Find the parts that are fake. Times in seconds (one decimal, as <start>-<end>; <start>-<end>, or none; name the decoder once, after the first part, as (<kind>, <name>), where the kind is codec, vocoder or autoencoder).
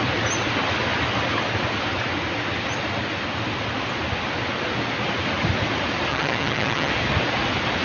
6.1-6.9 (vocoder, HiFi-GAN)